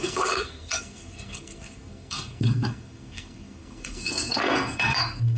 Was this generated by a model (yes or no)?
yes